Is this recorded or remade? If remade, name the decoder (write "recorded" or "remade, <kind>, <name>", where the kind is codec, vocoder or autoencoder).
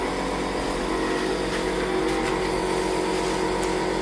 recorded